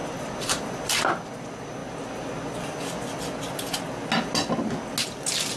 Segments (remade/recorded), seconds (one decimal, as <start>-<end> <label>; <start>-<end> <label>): 0.0-5.6 recorded

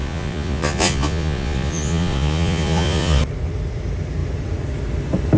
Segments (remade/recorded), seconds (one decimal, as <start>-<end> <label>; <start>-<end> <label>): 0.0-3.2 remade; 3.2-5.4 recorded

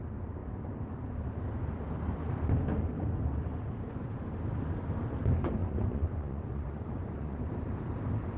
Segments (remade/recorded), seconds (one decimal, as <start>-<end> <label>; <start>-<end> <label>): 0.0-5.6 recorded; 5.6-7.4 remade; 7.4-8.4 recorded

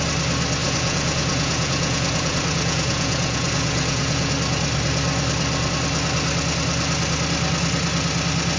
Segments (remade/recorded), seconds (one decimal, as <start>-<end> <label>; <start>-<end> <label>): 0.0-0.6 recorded; 0.6-4.3 remade; 4.3-8.6 recorded

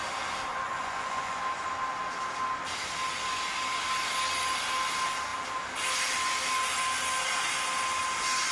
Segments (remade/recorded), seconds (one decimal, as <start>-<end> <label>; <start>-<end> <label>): 0.0-0.5 recorded; 0.5-1.4 remade; 1.4-8.5 recorded

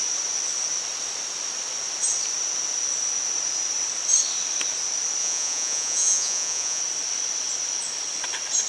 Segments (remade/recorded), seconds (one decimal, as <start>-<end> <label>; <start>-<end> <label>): 0.0-5.2 recorded; 5.2-6.8 remade; 6.8-8.7 recorded